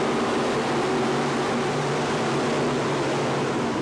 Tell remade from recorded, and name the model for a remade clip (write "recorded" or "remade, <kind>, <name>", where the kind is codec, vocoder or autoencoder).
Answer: recorded